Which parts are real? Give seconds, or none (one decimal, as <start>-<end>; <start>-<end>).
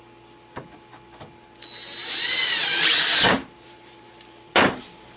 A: 0.0-2.0